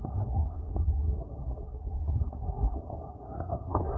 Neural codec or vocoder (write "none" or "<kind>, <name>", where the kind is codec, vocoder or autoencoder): codec, SNAC